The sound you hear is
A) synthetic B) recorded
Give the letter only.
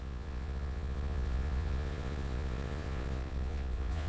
A